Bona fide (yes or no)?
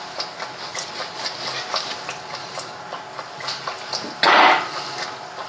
yes